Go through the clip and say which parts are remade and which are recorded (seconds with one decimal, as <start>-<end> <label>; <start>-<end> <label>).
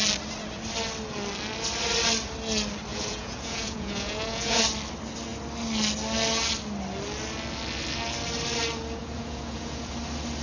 0.0-2.9 recorded; 2.9-4.6 remade; 4.6-9.0 recorded; 9.0-9.9 remade; 9.9-10.4 recorded